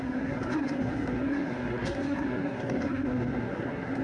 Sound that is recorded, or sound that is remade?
remade